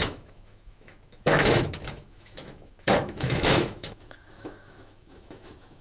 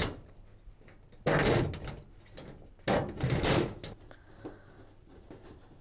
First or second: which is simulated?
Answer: first